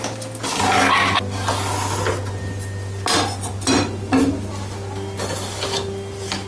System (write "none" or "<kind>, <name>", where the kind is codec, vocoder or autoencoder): none